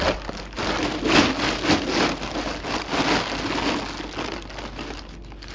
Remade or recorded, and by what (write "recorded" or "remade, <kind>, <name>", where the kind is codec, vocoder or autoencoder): recorded